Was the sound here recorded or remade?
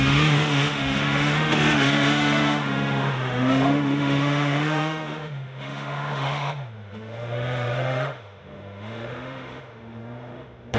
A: remade